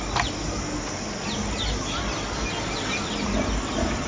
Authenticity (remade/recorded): recorded